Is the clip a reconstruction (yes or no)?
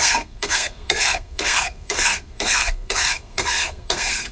yes